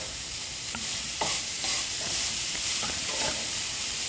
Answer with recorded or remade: remade